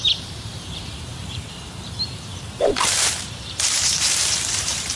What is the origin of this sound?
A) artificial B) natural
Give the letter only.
A